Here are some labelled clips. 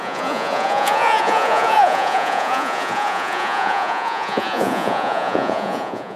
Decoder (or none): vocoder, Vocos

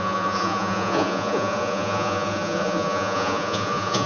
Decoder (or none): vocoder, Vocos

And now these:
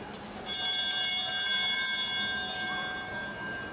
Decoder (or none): none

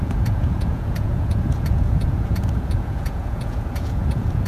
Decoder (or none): vocoder, Vocos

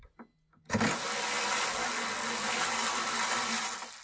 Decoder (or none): none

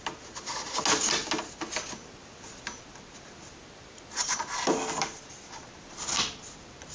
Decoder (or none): none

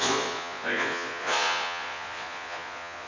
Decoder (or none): vocoder, Vocos